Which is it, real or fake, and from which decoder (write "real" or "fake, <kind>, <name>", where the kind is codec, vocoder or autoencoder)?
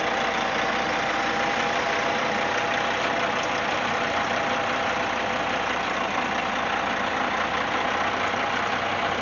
real